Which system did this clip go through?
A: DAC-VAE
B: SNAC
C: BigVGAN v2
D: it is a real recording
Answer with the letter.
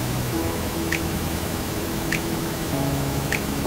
A